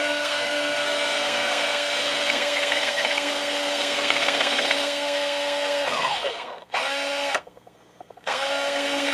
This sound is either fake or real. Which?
fake